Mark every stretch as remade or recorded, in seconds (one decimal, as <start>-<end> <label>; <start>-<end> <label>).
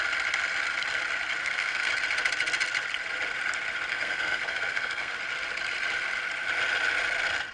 0.0-1.4 recorded; 1.4-1.9 remade; 1.9-3.9 recorded; 3.9-5.1 remade; 5.1-7.5 recorded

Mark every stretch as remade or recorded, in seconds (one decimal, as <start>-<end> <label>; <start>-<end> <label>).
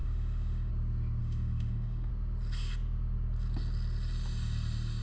0.0-0.7 remade; 0.7-1.2 recorded; 1.2-2.1 remade; 2.1-5.0 recorded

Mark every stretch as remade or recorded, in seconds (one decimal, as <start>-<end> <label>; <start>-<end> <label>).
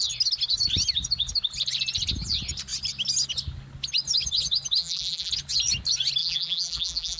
0.0-4.8 recorded; 4.8-5.3 remade; 5.3-6.2 recorded; 6.2-7.2 remade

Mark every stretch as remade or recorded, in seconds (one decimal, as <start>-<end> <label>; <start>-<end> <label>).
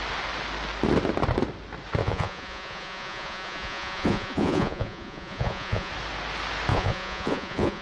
0.0-2.0 recorded; 2.0-5.9 remade; 5.9-6.7 recorded; 6.7-7.8 remade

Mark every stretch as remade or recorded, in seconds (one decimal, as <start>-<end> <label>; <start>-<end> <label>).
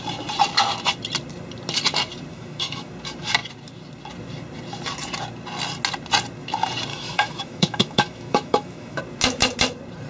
0.0-2.3 recorded; 2.3-2.9 remade; 2.9-6.9 recorded; 6.9-9.0 remade; 9.0-10.1 recorded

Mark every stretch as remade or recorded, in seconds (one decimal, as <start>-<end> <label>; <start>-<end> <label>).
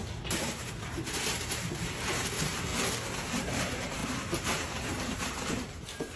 0.0-2.7 remade; 2.7-3.3 recorded; 3.3-6.2 remade